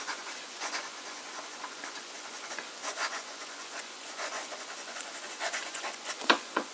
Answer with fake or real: fake